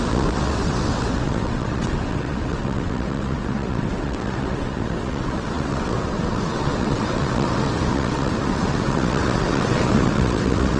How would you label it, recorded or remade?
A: remade